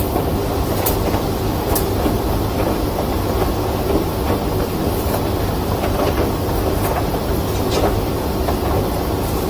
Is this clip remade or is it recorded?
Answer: recorded